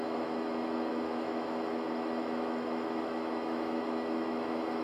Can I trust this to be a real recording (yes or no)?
no